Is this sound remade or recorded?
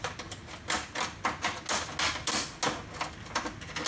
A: recorded